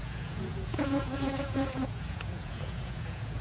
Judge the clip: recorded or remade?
remade